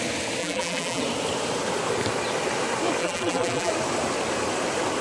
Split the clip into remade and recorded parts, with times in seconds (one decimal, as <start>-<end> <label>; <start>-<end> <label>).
0.0-0.4 recorded; 0.4-1.0 remade; 1.0-3.0 recorded; 3.0-3.7 remade; 3.7-5.0 recorded